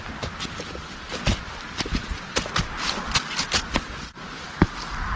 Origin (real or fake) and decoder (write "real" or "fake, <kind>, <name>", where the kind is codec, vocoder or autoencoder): real